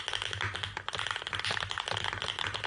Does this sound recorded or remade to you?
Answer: recorded